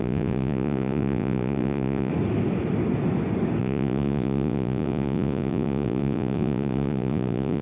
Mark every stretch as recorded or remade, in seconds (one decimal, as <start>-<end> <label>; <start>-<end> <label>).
0.0-2.1 remade; 2.1-3.6 recorded; 3.6-7.6 remade